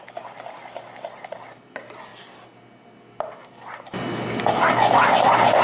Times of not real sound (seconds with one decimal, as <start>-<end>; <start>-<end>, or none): none